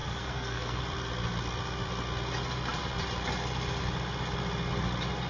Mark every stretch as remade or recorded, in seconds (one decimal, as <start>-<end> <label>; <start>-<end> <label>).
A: 0.0-0.8 remade; 0.8-5.3 recorded